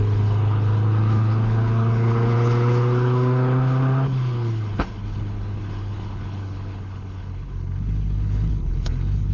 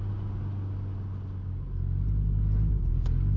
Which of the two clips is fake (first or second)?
first